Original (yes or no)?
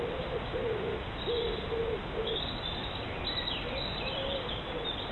yes